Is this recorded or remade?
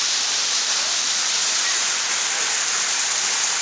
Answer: recorded